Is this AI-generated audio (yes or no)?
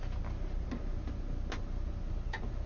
no